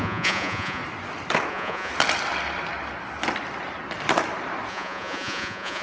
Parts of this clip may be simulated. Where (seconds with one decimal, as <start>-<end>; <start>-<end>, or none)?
0.0-0.8; 1.5-1.9; 4.7-5.8